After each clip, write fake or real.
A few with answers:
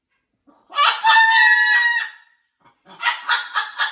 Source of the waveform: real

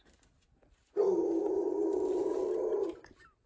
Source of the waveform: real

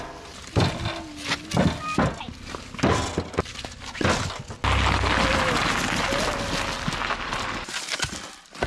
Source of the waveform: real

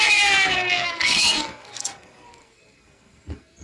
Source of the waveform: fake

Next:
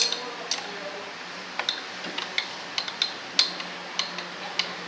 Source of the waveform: real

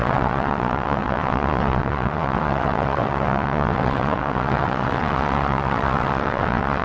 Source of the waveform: fake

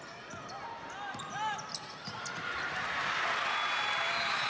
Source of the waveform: real